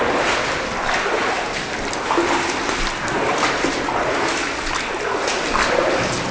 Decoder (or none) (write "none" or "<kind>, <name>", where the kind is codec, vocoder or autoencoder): none